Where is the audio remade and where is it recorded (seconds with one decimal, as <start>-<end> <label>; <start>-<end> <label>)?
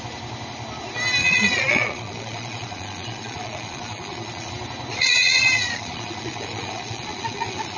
0.0-1.2 recorded; 1.2-4.5 remade; 4.5-4.9 recorded; 4.9-7.8 remade